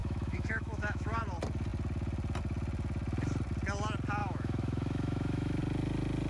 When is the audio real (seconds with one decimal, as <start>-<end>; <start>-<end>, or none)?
1.2-4.2; 5.6-6.3